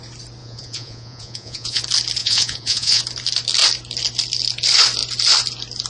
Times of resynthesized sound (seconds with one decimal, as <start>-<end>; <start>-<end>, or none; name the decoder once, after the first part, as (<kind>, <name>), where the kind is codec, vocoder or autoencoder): 0.4-1.8 (vocoder, Vocos); 2.2-3.0